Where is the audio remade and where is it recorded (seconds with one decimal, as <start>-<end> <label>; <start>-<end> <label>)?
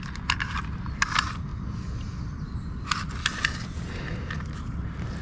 0.0-5.2 recorded